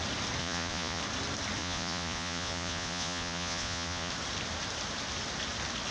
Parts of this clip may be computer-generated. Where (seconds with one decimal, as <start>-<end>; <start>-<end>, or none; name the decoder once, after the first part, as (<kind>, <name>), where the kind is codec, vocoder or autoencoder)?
0.4-1.0 (vocoder, Vocos); 1.6-4.1